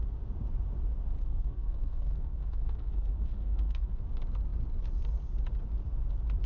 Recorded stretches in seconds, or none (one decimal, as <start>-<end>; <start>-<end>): 0.0-1.2; 4.0-6.5